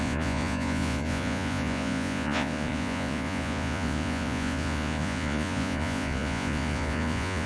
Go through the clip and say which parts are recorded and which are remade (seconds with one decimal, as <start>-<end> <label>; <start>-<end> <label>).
0.0-7.5 remade